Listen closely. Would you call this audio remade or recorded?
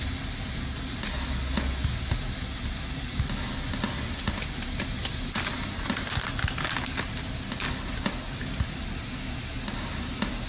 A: recorded